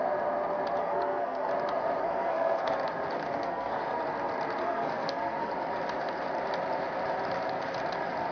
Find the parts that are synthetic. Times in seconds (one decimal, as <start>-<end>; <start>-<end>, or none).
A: 0.8-1.5; 2.0-2.7; 3.3-3.8; 4.6-5.5